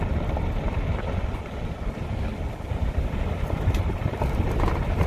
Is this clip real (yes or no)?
yes